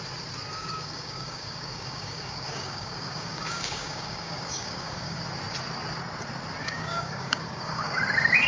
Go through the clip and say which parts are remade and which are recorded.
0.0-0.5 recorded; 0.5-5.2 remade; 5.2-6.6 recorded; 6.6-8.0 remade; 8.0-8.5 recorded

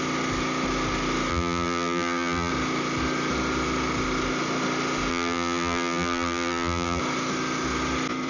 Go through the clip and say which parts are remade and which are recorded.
0.0-1.3 recorded; 1.3-2.5 remade; 2.5-5.1 recorded; 5.1-7.0 remade; 7.0-8.3 recorded

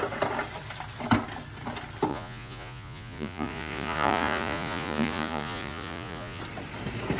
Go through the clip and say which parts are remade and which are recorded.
0.0-2.1 recorded; 2.1-6.4 remade; 6.4-7.2 recorded

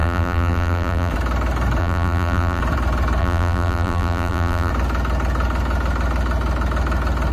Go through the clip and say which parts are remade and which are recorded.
0.0-1.1 remade; 1.1-1.8 recorded; 1.8-2.6 remade; 2.6-3.2 recorded; 3.2-4.7 remade; 4.7-7.3 recorded

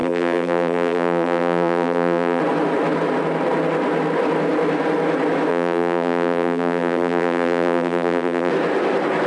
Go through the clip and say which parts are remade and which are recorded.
0.0-2.4 remade; 2.4-5.5 recorded; 5.5-8.5 remade; 8.5-9.3 recorded

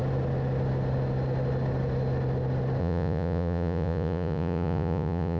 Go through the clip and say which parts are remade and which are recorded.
0.0-2.8 recorded; 2.8-5.4 remade